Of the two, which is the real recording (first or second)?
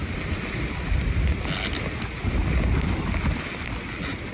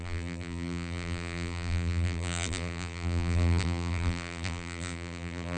first